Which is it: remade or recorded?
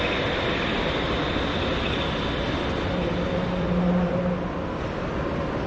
recorded